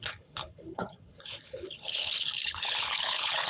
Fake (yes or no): yes